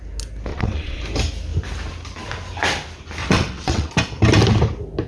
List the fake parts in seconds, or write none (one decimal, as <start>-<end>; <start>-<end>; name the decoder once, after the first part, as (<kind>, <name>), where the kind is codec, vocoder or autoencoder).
0.5-1.0 (vocoder, WaveNeXt); 3.2-3.9